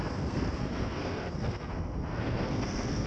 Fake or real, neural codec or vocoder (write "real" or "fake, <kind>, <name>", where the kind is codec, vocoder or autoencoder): fake, codec, SNAC